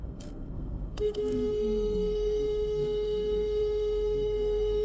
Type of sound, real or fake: fake